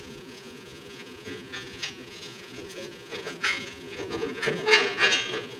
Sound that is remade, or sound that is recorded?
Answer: remade